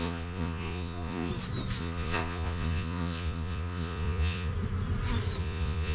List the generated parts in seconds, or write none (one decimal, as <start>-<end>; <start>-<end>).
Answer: 0.0-1.3; 1.8-4.5; 5.4-5.9